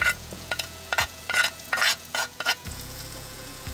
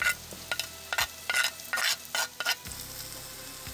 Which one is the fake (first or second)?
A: first